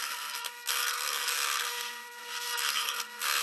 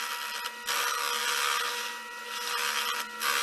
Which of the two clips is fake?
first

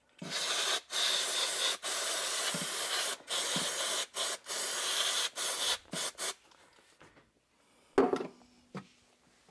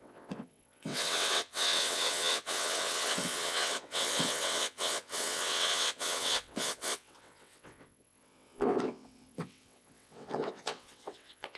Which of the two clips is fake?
second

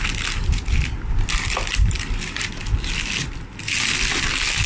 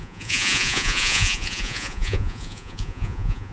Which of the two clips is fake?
second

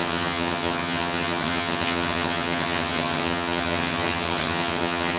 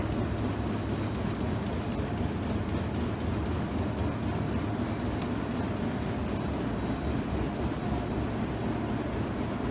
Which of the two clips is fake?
first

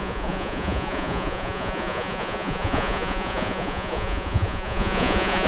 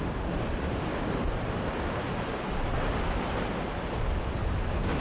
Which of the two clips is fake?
first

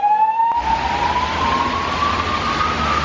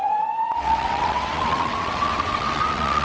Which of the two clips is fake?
second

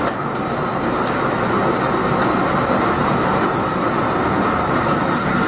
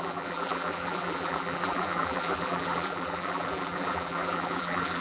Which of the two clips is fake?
second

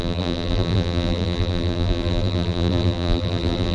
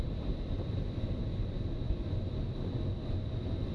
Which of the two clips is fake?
first